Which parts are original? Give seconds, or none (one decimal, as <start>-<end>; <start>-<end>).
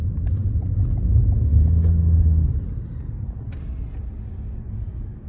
0.0-5.3